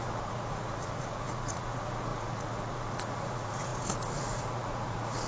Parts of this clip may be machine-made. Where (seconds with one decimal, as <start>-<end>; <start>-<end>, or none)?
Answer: 0.0-5.3